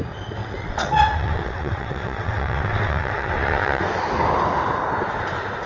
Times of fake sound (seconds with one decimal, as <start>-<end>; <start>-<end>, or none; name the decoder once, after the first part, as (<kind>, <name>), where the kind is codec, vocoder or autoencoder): 0.4-3.8 (vocoder, WaveNeXt)